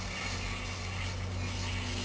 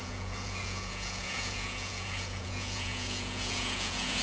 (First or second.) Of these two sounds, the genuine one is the first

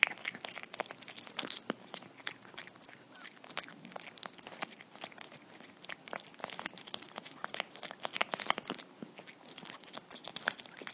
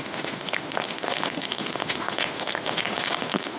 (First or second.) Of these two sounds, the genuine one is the first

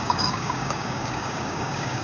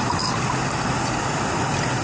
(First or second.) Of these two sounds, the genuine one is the second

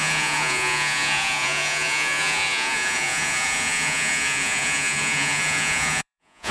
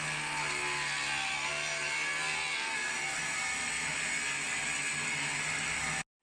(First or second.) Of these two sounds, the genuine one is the second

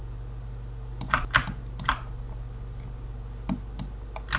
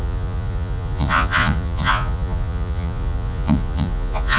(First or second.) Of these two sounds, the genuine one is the first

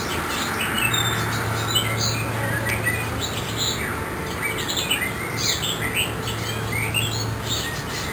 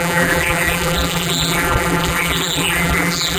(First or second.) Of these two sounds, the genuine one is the first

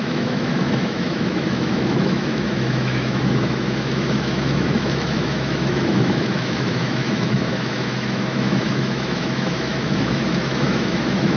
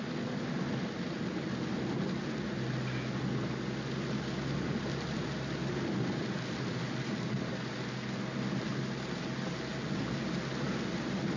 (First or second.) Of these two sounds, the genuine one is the second